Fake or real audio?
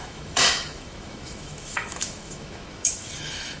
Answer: fake